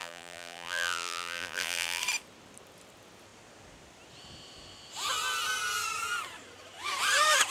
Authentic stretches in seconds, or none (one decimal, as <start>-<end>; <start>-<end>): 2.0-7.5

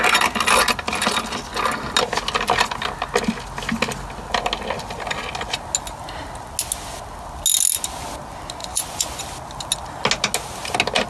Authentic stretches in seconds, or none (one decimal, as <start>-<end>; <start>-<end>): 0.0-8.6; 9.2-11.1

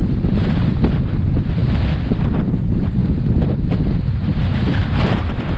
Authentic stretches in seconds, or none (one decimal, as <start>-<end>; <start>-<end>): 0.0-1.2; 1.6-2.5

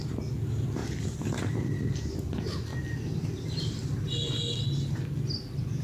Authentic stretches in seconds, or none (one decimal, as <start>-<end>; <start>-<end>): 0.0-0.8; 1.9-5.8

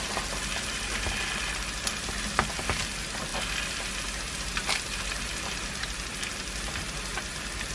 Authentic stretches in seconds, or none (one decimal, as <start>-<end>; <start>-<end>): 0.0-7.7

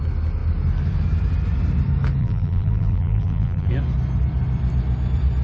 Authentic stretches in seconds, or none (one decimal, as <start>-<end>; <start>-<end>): 0.0-2.2; 3.7-5.4

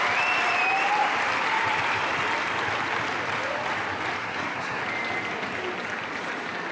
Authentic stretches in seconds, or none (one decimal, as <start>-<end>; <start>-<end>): 0.0-4.2; 4.8-6.7